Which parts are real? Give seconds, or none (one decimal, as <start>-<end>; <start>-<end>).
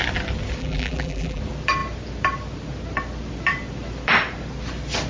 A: 0.0-0.6; 1.4-5.1